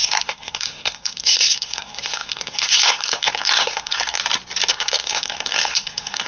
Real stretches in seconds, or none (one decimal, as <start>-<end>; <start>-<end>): 4.2-4.7